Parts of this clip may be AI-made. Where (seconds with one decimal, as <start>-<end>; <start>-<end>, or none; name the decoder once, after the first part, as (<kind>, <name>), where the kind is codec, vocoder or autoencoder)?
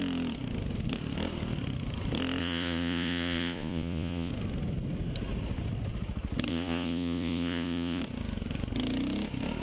2.4-4.3 (vocoder, Vocos); 6.5-8.0